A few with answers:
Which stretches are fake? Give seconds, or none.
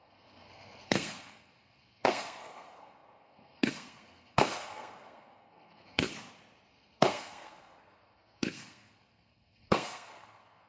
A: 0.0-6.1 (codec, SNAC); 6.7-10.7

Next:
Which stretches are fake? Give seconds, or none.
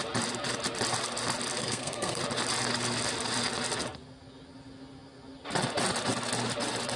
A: 1.6-2.2 (codec, SNAC)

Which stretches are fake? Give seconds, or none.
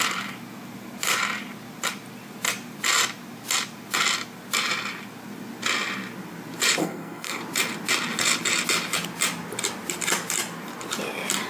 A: 6.8-7.4 (codec, SNAC)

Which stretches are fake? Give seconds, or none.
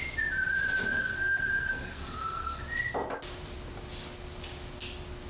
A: 0.9-2.6 (codec, SNAC)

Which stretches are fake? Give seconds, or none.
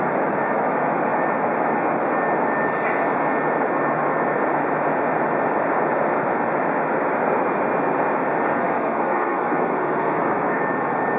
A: 8.5-10.6 (codec, SNAC)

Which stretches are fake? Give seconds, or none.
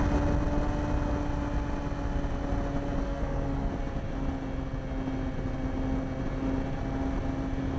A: 3.0-3.7 (codec, SNAC)